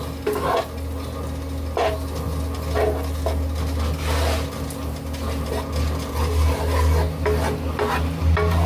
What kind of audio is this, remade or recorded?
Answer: recorded